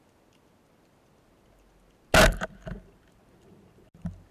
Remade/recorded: recorded